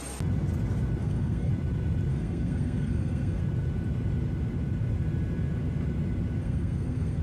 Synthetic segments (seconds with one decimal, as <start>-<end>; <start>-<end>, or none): 1.0-1.5; 2.1-3.4; 6.4-7.2